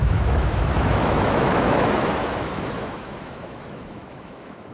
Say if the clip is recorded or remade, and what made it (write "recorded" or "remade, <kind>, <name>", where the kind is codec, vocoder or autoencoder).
remade, autoencoder, DAC-VAE